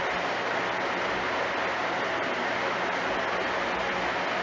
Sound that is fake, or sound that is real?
real